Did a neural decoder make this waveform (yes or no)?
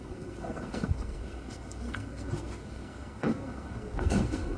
yes